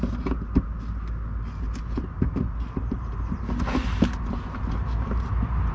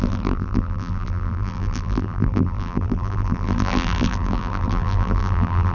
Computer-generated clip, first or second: second